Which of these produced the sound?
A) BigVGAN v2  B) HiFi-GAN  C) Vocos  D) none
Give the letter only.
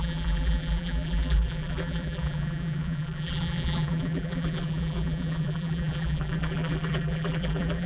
A